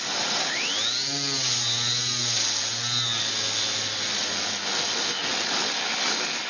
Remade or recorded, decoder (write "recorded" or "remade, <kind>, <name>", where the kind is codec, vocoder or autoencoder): recorded